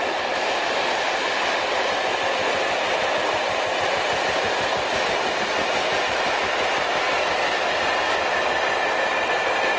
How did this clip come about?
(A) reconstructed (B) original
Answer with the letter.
A